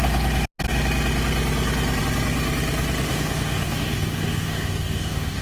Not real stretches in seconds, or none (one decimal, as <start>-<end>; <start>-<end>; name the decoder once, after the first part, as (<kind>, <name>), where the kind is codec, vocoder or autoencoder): 3.1-5.4 (codec, DAC)